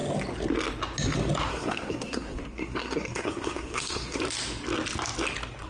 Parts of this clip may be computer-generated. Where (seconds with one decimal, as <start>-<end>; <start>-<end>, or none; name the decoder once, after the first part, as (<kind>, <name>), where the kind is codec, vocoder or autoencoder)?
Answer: 1.5-4.2 (codec, SNAC)